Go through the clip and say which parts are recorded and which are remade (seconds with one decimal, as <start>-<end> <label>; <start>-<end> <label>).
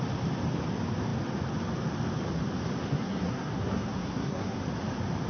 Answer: 0.0-2.8 recorded; 2.8-4.6 remade; 4.6-5.3 recorded